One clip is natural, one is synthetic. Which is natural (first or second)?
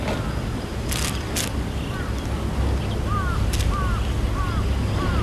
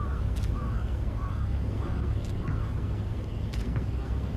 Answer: first